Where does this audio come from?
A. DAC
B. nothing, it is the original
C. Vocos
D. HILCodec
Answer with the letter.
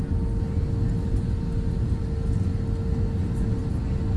B